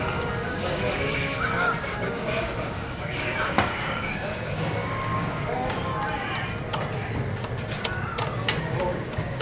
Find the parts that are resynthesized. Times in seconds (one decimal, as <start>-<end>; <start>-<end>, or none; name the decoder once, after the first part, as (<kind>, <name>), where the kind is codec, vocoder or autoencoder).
0.0-5.9 (codec, DAC); 8.8-9.4